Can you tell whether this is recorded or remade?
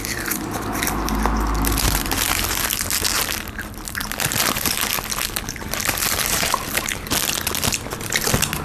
remade